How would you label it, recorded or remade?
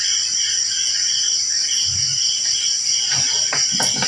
recorded